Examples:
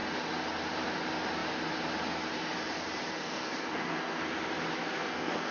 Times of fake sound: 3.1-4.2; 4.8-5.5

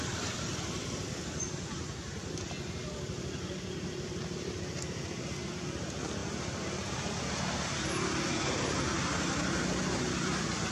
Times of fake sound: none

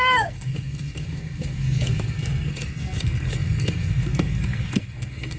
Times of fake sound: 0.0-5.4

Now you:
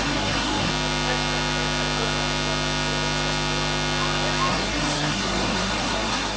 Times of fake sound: 0.0-0.7; 4.5-6.4